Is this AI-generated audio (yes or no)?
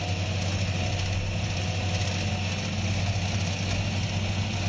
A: no